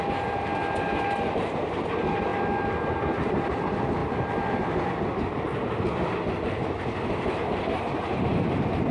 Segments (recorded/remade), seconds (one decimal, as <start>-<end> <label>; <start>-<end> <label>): 0.0-8.9 recorded